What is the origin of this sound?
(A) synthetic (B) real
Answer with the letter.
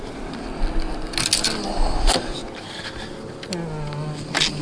B